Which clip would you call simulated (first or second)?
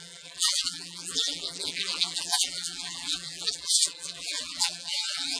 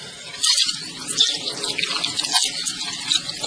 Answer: first